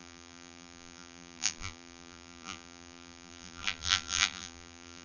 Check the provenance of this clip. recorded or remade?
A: remade